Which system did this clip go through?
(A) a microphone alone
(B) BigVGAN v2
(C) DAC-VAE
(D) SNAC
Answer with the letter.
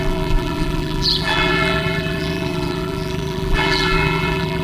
B